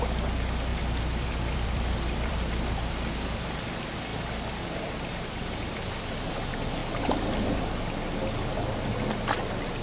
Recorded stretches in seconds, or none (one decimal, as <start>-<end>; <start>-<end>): 0.0-0.7; 2.9-4.1; 6.3-9.8